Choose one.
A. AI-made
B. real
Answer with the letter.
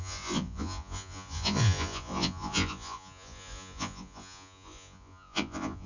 A